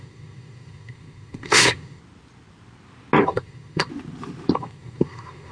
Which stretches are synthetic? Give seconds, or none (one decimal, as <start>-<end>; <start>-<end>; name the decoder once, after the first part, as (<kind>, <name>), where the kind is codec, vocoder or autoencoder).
0.0-2.0 (codec, SNAC); 3.2-3.9; 4.5-5.5